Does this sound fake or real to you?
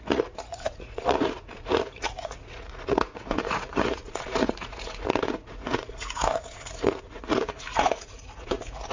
fake